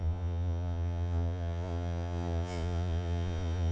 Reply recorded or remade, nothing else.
remade